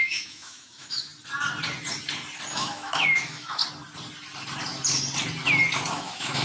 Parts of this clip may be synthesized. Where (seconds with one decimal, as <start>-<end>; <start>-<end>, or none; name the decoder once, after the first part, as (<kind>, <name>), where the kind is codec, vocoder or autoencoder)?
0.0-1.1 (autoencoder, DAC-VAE); 2.5-3.6; 5.9-6.4